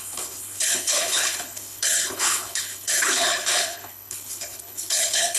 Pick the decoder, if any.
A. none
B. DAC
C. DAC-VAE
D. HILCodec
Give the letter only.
D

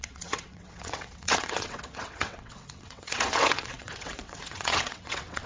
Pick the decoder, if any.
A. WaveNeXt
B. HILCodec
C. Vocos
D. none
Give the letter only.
A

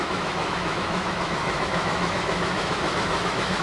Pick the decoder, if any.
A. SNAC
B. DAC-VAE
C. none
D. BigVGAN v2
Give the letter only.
B